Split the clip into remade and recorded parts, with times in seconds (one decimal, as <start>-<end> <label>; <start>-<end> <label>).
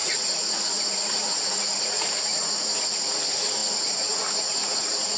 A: 0.0-5.2 remade